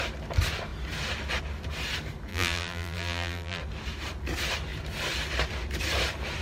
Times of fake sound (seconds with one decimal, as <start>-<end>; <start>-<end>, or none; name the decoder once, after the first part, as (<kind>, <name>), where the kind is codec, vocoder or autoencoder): 2.3-3.6 (vocoder, BigVGAN v2)